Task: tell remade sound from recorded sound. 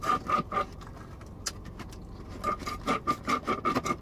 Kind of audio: recorded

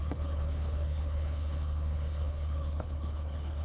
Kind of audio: remade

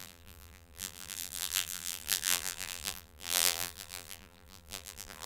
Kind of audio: remade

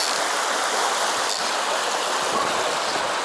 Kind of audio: recorded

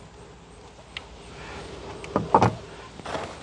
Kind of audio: recorded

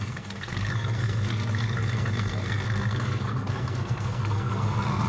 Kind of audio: remade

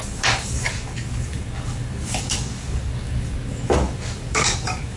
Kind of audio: remade